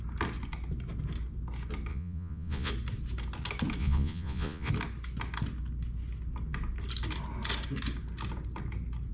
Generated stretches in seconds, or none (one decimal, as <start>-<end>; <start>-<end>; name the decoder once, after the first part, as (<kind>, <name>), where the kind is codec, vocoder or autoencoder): 1.9-2.7 (vocoder, Vocos); 3.8-4.7